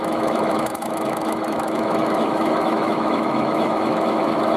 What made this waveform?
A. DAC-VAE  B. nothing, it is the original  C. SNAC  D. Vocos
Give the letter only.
A